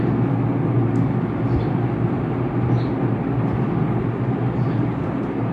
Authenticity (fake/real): real